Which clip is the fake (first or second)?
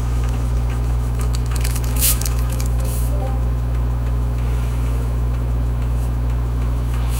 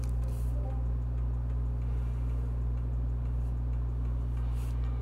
first